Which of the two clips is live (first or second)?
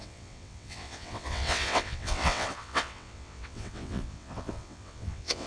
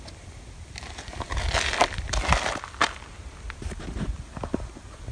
second